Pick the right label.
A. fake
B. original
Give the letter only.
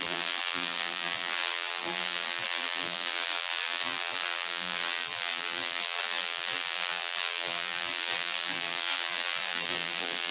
A